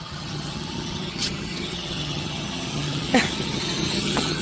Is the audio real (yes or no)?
no